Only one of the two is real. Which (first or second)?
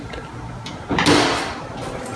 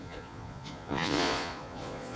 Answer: first